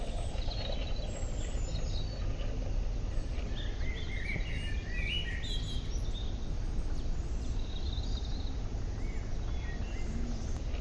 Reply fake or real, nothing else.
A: real